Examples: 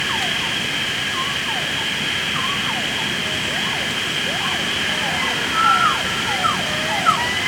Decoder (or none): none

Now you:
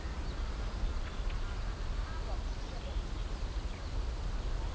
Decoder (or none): vocoder, BigVGAN v2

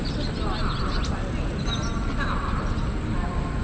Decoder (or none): none